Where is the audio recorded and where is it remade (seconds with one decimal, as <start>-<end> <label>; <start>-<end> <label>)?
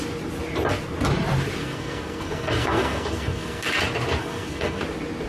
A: 0.0-1.6 recorded; 1.6-3.8 remade; 3.8-4.2 recorded; 4.2-4.8 remade; 4.8-5.3 recorded